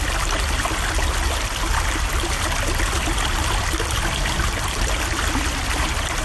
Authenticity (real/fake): real